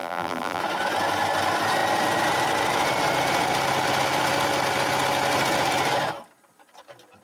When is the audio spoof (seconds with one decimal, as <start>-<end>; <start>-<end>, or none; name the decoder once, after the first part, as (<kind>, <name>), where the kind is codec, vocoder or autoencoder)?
0.0-0.6 (vocoder, BigVGAN v2)